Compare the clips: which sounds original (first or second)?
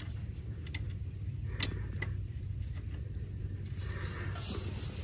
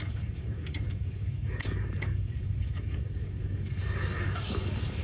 first